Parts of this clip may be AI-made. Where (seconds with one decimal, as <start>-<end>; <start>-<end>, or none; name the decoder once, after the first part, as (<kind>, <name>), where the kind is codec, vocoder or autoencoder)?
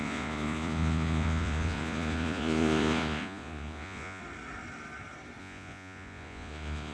0.0-4.2 (vocoder, Vocos); 5.4-6.9